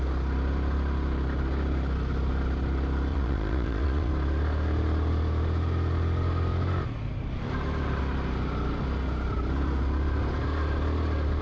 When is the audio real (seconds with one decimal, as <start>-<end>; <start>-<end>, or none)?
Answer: 0.0-3.1; 4.1-11.4